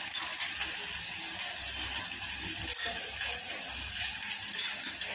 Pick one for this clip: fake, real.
real